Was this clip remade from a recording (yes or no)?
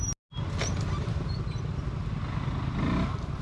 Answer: no